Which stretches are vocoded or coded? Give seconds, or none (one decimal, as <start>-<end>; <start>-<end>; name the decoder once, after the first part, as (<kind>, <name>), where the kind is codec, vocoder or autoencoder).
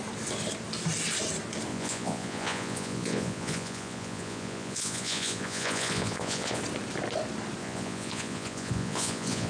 1.7-6.6 (vocoder, Vocos); 7.6-9.5